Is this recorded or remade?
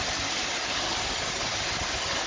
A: recorded